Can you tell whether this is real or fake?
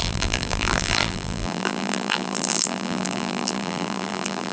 fake